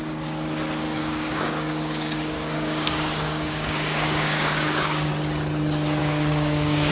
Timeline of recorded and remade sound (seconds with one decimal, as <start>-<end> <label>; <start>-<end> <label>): 0.0-1.0 recorded; 1.0-5.1 remade; 5.1-6.0 recorded; 6.0-6.9 remade